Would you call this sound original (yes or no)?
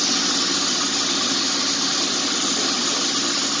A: yes